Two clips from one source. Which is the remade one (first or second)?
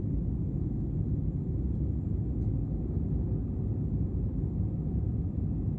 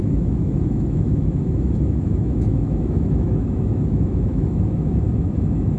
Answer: second